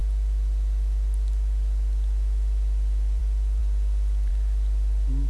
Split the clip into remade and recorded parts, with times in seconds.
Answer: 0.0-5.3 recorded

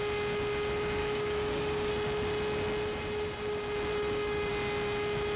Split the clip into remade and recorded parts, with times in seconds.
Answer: 0.0-1.0 recorded; 1.0-1.9 remade; 1.9-3.9 recorded; 3.9-4.5 remade; 4.5-5.4 recorded

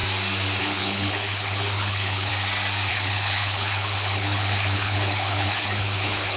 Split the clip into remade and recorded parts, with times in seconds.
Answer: 0.0-0.6 recorded; 0.6-2.3 remade; 2.3-2.9 recorded; 2.9-6.4 remade

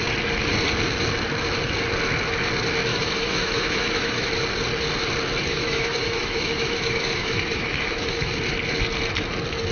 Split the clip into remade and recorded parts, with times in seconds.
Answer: 0.0-2.9 recorded; 2.9-4.3 remade; 4.3-5.5 recorded; 5.5-8.3 remade; 8.3-9.7 recorded

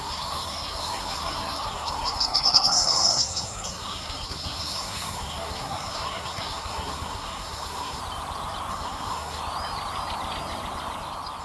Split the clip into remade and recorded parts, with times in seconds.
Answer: 0.0-8.0 remade; 8.0-8.7 recorded; 8.7-9.4 remade; 9.4-11.4 recorded

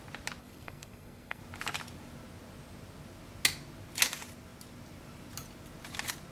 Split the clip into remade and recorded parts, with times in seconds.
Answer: 0.0-0.4 recorded; 0.4-1.4 remade; 1.4-6.3 recorded

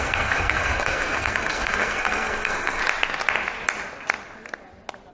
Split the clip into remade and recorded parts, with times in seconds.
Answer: 0.0-2.8 remade; 2.8-5.1 recorded